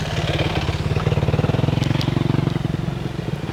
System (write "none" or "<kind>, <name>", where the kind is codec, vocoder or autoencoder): none